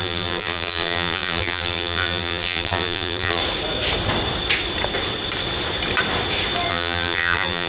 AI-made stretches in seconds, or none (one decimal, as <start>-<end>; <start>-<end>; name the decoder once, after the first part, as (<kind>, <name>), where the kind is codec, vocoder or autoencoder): 0.0-3.4 (vocoder, BigVGAN v2); 6.7-7.7